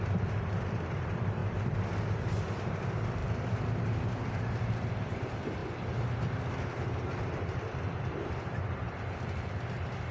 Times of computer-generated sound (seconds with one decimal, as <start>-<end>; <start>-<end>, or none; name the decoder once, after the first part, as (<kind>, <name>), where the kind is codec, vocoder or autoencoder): 0.0-1.4 (vocoder, BigVGAN v2); 2.4-5.6; 9.4-10.1